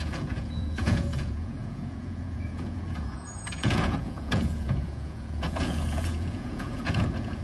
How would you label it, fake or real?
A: fake